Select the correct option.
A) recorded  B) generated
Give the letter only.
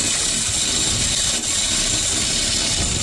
A